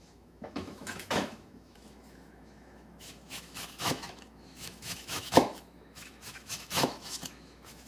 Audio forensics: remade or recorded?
remade